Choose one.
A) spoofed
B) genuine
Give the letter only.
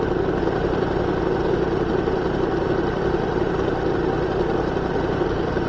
B